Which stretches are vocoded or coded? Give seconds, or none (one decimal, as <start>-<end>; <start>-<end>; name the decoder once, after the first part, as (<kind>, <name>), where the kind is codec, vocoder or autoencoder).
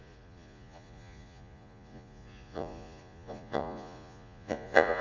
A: 0.0-5.0 (vocoder, Vocos)